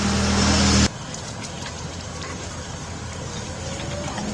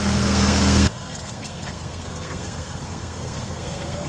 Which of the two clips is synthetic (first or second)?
second